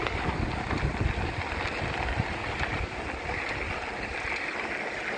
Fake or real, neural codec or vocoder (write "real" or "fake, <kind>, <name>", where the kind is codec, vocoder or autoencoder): real